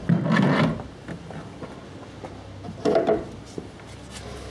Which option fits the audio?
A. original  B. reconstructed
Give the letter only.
A